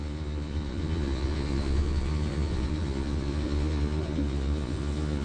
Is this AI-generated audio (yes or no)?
yes